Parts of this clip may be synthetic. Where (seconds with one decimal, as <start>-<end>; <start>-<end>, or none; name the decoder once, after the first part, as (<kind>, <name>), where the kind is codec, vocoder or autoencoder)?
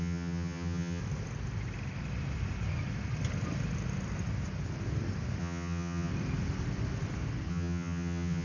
0.0-1.0 (vocoder, HiFi-GAN); 5.4-6.1; 7.5-8.4